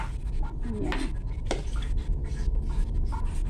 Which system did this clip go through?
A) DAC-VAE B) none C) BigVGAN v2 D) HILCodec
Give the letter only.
B